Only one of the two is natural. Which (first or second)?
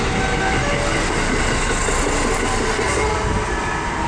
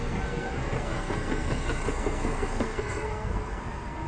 first